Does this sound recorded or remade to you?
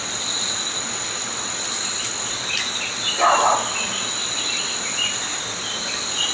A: recorded